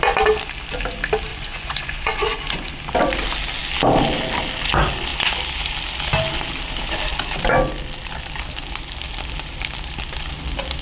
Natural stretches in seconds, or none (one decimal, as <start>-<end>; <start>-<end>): 0.0-1.3; 2.7-10.8